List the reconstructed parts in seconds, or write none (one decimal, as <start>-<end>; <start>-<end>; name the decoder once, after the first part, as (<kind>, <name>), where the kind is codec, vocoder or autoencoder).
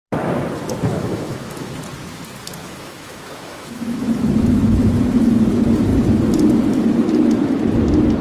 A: 0.9-1.7 (autoencoder, DAC-VAE); 2.6-4.9